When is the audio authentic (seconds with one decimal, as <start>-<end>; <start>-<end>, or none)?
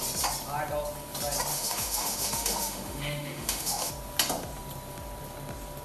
0.0-1.5; 3.9-5.8